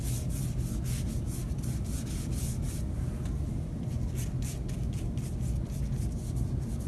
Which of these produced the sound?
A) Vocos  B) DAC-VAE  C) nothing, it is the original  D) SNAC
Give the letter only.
C